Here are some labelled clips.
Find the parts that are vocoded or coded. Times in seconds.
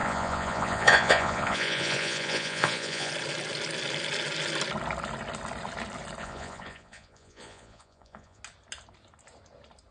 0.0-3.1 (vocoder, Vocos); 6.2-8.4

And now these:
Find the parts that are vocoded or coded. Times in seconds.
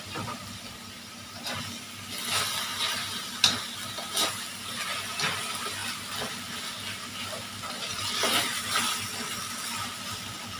5.8-6.3 (vocoder, BigVGAN v2)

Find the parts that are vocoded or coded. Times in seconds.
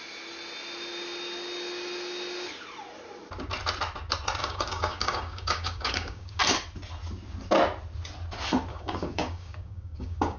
4.4-6.4 (codec, DAC); 8.7-10.4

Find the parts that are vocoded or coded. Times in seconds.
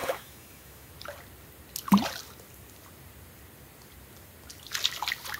0.0-0.9 (autoencoder, DAC-VAE)